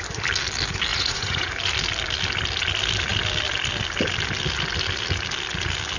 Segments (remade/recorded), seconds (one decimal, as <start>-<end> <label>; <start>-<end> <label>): 0.0-0.9 recorded; 0.9-1.5 remade; 1.5-6.0 recorded